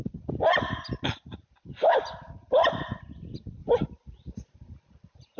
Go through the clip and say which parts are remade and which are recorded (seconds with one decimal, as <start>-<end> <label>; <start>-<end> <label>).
0.0-3.6 recorded; 3.6-5.4 remade